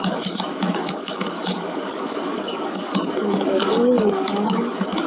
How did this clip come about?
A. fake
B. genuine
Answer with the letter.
A